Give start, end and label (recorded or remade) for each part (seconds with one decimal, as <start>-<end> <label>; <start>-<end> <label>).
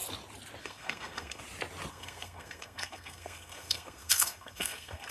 0.0-0.6 recorded; 0.6-1.4 remade; 1.4-1.9 recorded; 1.9-5.1 remade